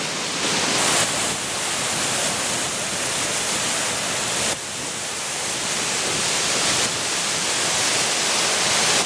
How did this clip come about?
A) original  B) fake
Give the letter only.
A